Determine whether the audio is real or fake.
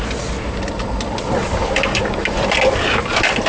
real